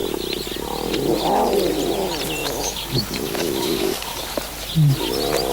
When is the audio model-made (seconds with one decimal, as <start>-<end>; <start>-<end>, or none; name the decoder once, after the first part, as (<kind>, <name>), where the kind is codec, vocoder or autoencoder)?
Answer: 2.4-4.3 (codec, DAC)